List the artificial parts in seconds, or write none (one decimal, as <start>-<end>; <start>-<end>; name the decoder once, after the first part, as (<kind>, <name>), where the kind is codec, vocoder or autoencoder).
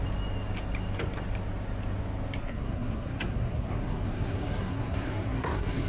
2.4-5.9 (codec, SNAC)